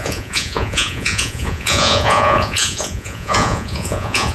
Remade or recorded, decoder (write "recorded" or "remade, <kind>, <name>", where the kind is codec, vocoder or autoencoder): remade, vocoder, Vocos